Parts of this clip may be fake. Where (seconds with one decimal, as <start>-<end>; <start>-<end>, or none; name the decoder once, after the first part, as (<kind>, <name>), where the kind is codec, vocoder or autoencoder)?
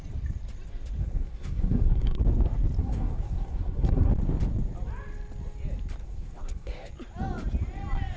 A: 1.0-2.2 (codec, SNAC); 2.8-4.1; 6.0-6.9